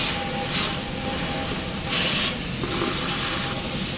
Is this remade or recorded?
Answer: recorded